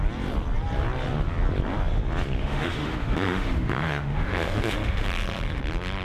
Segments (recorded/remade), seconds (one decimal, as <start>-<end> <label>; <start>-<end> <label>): 0.0-2.4 recorded; 2.4-5.6 remade; 5.6-6.0 recorded